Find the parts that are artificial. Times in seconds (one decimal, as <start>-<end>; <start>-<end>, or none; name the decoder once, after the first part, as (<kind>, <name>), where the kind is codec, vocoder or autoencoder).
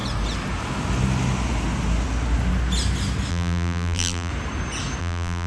3.3-4.3 (vocoder, BigVGAN v2); 5.0-5.5